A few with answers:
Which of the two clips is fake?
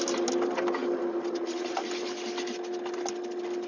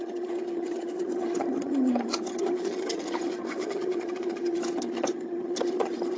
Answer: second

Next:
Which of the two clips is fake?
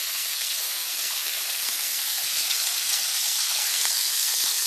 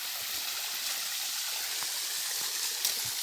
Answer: first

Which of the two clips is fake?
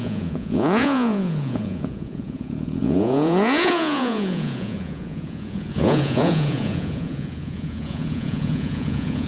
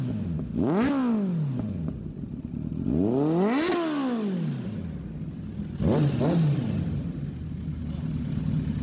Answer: first